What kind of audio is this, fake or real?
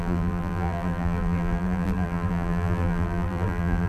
fake